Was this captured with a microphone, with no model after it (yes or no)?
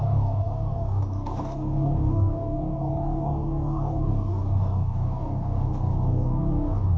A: no